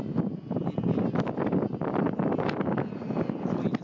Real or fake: real